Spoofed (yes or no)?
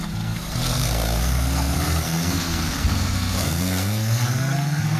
yes